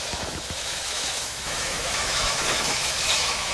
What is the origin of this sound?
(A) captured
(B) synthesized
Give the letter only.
B